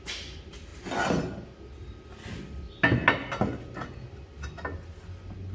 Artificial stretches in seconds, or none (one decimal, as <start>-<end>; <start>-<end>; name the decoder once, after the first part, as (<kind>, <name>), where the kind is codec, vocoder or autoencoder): none